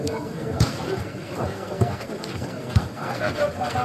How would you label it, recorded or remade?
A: remade